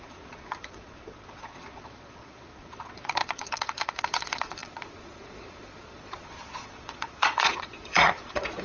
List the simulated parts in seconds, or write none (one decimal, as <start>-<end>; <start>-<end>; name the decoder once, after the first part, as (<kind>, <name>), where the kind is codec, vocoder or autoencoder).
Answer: 0.0-8.6 (vocoder, Vocos)